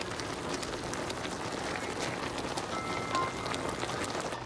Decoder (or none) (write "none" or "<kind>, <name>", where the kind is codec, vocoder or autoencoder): none